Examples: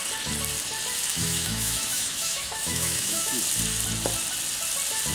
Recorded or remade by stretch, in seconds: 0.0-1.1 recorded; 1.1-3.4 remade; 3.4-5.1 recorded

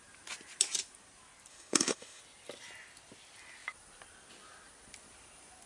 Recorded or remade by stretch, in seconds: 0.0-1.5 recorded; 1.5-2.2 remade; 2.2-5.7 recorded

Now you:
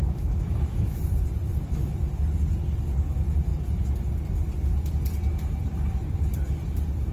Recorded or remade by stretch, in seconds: 0.0-1.0 remade; 1.0-1.5 recorded; 1.5-2.1 remade; 2.1-7.1 recorded

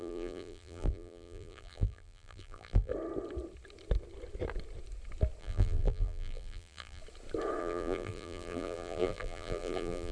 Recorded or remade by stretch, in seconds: 0.0-2.9 remade; 2.9-5.4 recorded; 5.4-7.0 remade; 7.0-7.6 recorded; 7.6-10.1 remade